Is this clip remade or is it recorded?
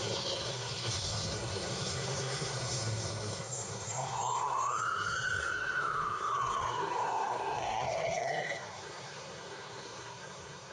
remade